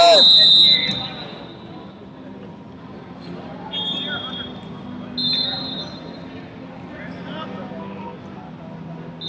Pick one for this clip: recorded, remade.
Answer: recorded